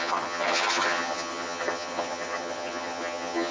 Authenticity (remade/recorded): remade